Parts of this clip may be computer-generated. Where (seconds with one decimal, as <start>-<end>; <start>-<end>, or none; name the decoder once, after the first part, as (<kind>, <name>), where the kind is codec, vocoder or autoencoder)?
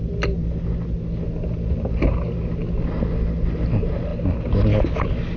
none